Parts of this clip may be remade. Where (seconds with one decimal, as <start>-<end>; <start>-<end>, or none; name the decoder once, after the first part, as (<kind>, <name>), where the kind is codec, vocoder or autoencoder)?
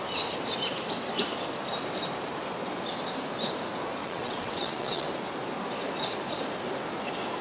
4.0-5.1 (vocoder, WaveNeXt)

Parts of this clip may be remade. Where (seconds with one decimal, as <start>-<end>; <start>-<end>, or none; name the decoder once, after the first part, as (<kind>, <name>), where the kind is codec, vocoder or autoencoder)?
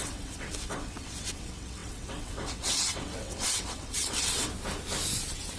0.0-4.5 (vocoder, WaveNeXt)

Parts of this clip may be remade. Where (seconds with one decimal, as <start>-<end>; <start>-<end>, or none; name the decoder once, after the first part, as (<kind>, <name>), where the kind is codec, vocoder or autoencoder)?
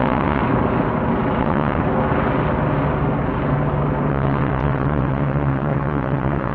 0.0-0.4 (vocoder, WaveNeXt); 1.4-1.8; 4.1-6.5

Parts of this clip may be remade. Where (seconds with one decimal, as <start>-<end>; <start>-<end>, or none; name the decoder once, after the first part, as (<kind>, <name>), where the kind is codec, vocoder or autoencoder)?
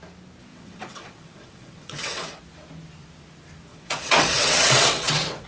0.5-2.4 (vocoder, WaveNeXt); 3.7-5.5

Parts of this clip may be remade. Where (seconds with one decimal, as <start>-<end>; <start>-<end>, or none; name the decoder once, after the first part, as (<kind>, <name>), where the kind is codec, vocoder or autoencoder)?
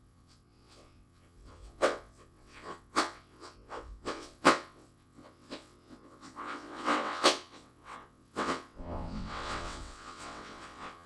0.0-11.1 (vocoder, WaveNeXt)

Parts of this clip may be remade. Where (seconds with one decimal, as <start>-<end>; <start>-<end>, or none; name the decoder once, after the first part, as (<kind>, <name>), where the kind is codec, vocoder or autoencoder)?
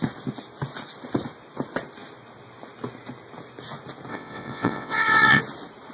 4.1-5.4 (vocoder, WaveNeXt)